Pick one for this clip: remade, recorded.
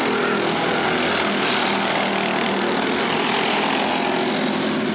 recorded